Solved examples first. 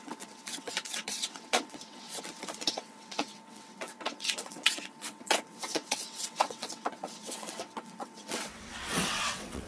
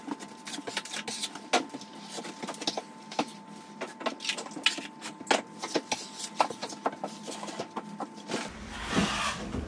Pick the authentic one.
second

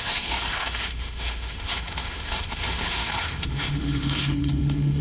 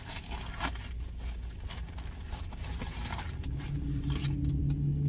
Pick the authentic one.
second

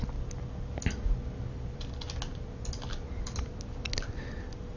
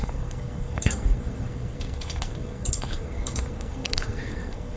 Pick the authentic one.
first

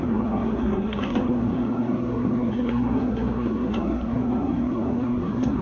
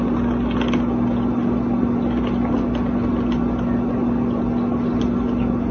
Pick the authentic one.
second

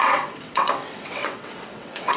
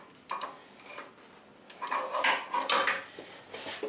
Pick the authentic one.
second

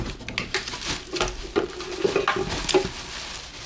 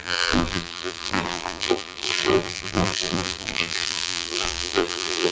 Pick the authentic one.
first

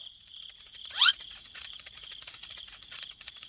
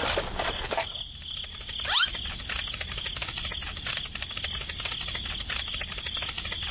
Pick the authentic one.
second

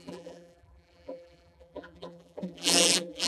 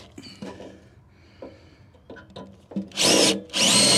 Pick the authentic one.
second